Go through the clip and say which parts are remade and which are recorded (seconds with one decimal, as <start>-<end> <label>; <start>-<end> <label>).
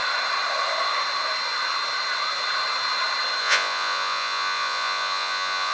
0.0-3.4 recorded; 3.4-5.7 remade